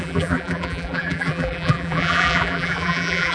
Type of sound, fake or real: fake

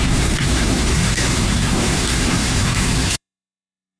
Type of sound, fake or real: fake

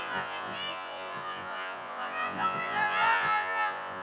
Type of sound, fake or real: fake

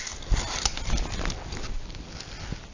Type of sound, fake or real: real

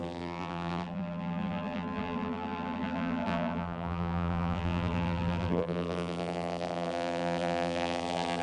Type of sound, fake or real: fake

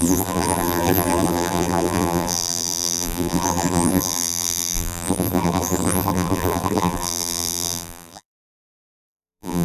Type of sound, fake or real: fake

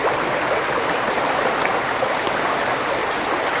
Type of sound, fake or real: real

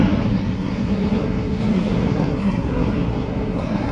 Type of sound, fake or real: fake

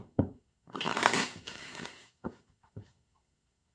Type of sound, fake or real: fake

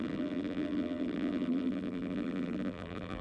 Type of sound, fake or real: fake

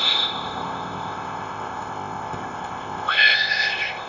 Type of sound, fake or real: fake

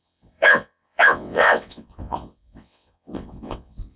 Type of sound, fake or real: fake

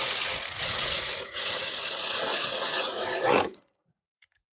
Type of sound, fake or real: fake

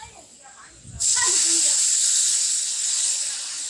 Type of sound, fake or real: real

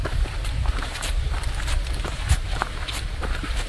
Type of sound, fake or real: fake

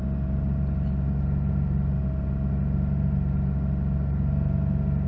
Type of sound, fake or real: real